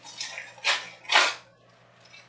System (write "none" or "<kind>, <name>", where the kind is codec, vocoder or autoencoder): none